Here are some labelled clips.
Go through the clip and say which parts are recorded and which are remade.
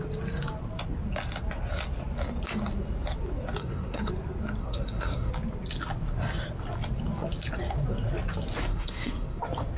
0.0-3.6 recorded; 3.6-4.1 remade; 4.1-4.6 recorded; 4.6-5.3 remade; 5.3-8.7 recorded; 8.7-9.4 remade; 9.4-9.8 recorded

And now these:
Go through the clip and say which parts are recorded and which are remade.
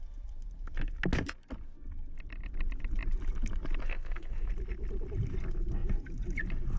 0.0-3.8 recorded; 3.8-4.5 remade; 4.5-6.8 recorded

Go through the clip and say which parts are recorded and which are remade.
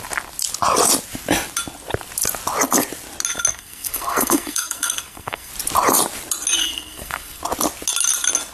0.0-3.5 recorded; 3.5-5.5 remade; 5.5-6.6 recorded; 6.6-7.4 remade; 7.4-8.5 recorded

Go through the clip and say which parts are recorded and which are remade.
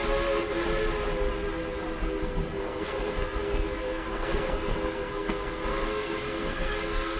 0.0-2.2 recorded; 2.2-7.2 remade